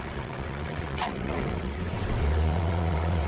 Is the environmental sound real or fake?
fake